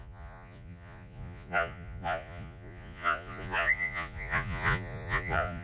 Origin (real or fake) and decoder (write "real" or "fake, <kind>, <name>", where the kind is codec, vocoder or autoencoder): fake, vocoder, Vocos